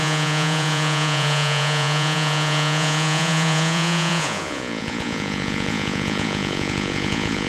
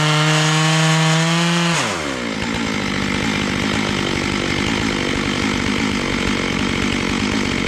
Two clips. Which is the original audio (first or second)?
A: second